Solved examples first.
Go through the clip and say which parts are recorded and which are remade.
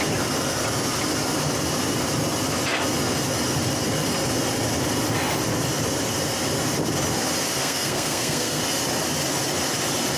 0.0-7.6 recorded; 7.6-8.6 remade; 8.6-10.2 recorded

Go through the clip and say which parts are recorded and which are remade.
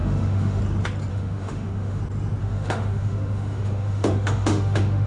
0.0-0.6 remade; 0.6-1.1 recorded; 1.1-2.0 remade; 2.0-2.4 recorded; 2.4-5.1 remade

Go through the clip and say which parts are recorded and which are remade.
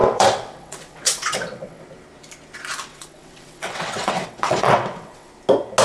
0.0-1.8 remade; 1.8-2.9 recorded; 2.9-5.3 remade; 5.3-5.8 recorded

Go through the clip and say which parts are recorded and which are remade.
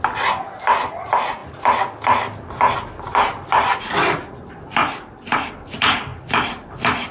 0.0-4.8 recorded; 4.8-5.5 remade; 5.5-6.1 recorded; 6.1-7.1 remade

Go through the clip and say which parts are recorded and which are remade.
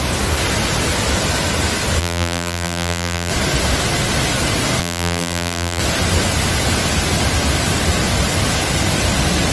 0.0-2.0 recorded; 2.0-3.3 remade; 3.3-4.8 recorded; 4.8-5.8 remade; 5.8-9.5 recorded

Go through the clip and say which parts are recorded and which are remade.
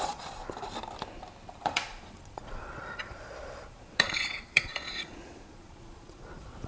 0.0-0.4 remade; 0.4-1.6 recorded; 1.6-6.7 remade